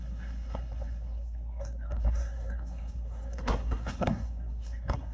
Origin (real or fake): fake